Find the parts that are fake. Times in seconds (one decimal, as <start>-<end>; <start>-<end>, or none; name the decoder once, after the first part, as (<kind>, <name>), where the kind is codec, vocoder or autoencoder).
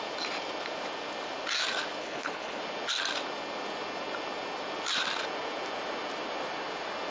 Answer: 2.0-2.6 (codec, HILCodec)